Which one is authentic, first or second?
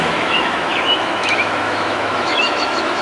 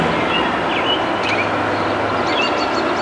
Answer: second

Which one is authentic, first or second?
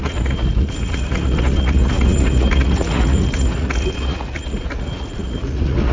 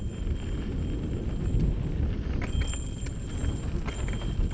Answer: second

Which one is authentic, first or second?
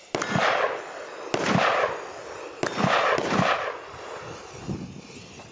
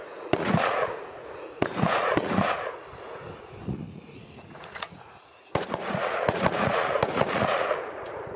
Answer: first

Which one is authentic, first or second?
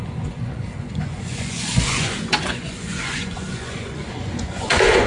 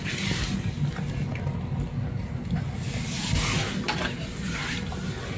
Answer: second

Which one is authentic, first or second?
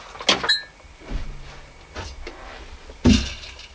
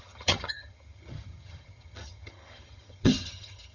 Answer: first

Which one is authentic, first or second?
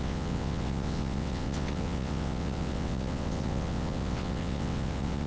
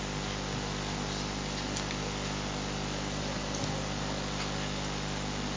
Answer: second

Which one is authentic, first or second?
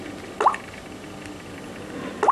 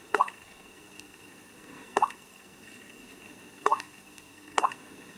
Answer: first